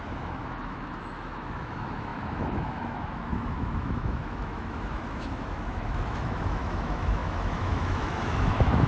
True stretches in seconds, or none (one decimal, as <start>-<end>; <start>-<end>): none